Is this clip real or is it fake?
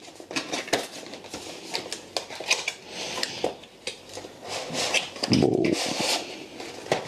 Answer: real